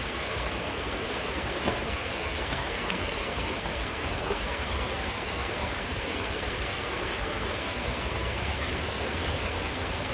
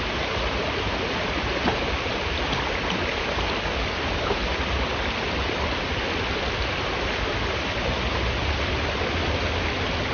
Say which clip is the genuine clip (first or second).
second